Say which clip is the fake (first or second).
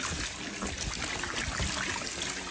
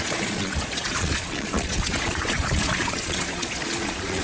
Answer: second